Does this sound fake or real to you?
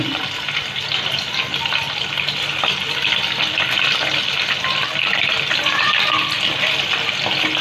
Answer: real